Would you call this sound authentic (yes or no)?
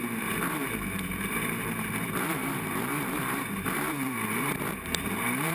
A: no